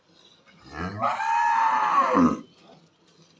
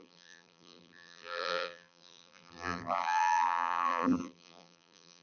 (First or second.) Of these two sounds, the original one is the first